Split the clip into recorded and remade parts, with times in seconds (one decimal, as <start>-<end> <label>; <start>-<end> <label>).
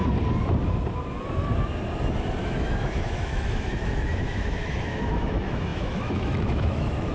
0.0-2.4 recorded; 2.4-7.1 remade